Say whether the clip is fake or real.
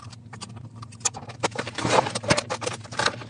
fake